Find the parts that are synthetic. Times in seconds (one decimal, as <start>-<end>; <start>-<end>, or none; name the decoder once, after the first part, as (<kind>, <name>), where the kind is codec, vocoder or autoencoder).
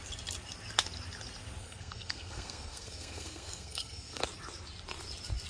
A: 1.6-4.2 (codec, SNAC)